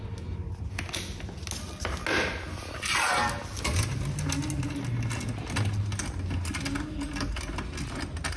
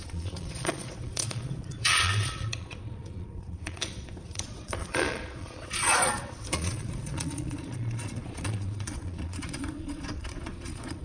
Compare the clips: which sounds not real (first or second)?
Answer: second